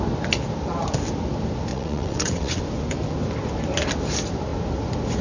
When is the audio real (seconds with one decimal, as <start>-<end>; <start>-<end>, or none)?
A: 0.0-1.7; 2.6-5.2